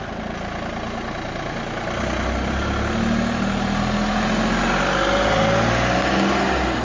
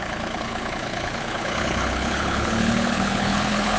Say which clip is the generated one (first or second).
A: second